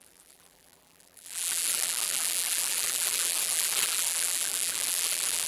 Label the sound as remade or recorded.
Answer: remade